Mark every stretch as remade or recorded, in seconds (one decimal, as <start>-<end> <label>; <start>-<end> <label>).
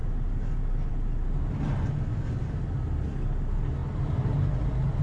0.0-5.0 recorded